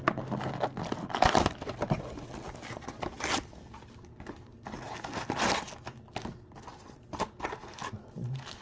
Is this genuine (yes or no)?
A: yes